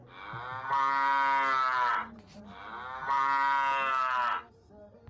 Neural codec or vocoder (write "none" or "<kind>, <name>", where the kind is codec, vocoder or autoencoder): none